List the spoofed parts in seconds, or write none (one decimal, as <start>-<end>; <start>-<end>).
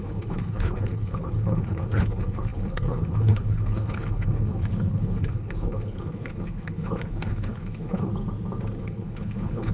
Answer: 0.0-8.1; 8.8-9.7